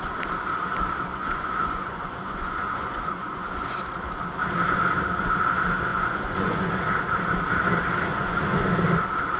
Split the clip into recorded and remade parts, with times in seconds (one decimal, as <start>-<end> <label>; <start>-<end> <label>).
0.0-1.1 recorded; 1.1-3.8 remade; 3.8-5.9 recorded; 5.9-6.7 remade; 6.7-8.1 recorded; 8.1-8.6 remade; 8.6-9.4 recorded